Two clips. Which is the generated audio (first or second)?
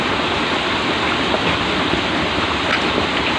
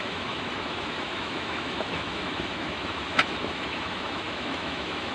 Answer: second